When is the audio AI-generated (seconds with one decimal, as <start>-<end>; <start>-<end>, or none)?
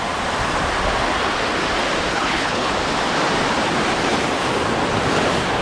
2.1-2.7